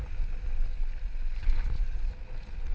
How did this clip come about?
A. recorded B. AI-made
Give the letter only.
A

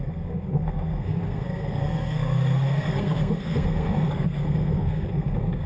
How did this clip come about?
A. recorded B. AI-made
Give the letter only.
B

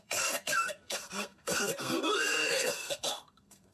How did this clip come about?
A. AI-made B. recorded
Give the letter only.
A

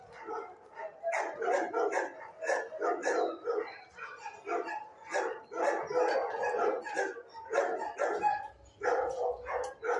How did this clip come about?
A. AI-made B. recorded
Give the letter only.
B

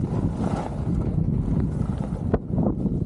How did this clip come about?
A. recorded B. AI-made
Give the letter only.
A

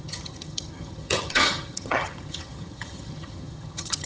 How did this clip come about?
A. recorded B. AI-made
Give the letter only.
B